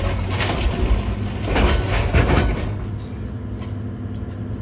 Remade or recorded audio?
recorded